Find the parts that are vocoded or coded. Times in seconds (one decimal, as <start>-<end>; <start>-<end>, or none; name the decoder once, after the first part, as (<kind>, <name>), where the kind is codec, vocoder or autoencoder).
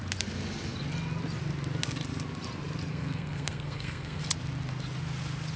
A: 2.9-4.2 (codec, SNAC)